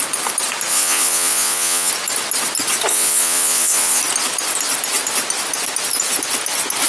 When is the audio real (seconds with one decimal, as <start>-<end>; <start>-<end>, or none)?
0.0-0.7; 1.9-2.9; 4.0-6.9